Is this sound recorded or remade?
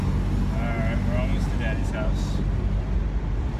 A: recorded